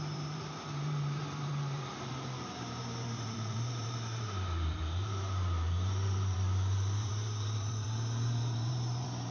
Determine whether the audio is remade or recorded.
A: remade